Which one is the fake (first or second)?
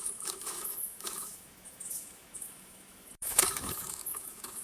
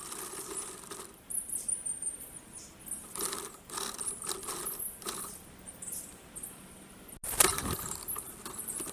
first